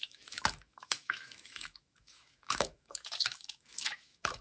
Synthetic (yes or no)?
yes